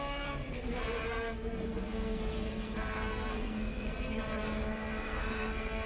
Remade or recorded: remade